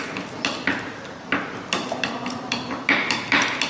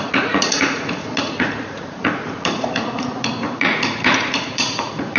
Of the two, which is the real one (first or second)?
first